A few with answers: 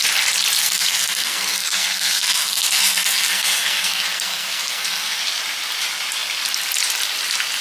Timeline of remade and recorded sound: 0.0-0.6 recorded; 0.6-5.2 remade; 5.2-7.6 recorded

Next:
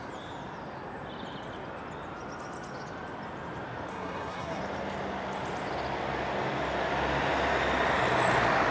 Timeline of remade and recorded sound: 0.0-3.9 recorded; 3.9-4.6 remade; 4.6-8.7 recorded